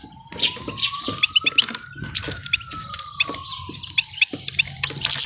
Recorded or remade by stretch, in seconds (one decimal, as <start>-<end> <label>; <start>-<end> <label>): 0.0-2.0 recorded; 2.0-5.3 remade